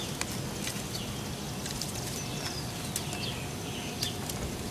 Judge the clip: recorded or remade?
recorded